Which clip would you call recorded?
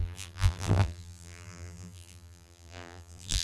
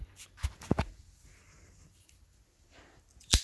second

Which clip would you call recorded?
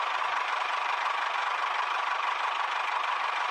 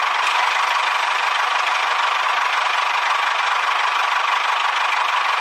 second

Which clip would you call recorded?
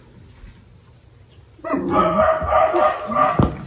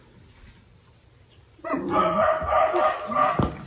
first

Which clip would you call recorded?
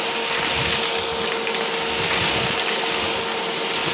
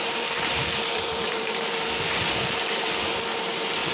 first